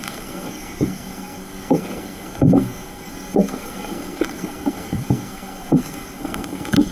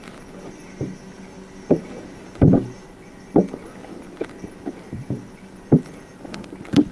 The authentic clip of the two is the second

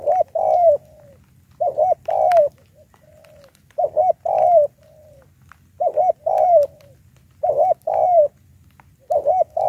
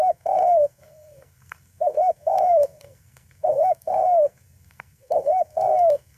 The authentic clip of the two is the first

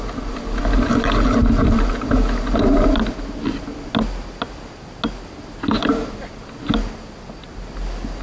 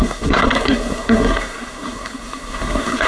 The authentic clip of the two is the first